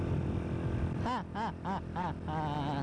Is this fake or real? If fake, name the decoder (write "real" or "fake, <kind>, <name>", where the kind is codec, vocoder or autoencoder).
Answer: real